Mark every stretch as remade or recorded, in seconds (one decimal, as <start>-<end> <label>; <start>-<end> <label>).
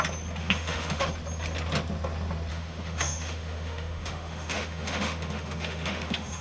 0.0-0.4 recorded; 0.4-1.1 remade; 1.1-2.5 recorded; 2.5-6.4 remade